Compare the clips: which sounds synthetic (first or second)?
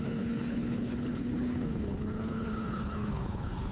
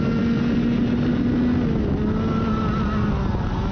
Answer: first